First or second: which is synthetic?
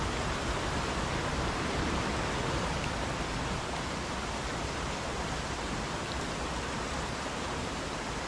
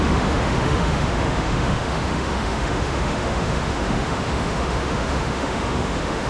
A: second